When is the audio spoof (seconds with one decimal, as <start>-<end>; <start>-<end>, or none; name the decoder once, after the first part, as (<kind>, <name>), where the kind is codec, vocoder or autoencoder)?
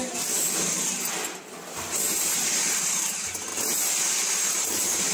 1.7-5.1 (vocoder, BigVGAN v2)